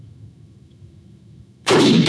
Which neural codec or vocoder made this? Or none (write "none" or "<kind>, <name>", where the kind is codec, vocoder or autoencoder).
autoencoder, DAC-VAE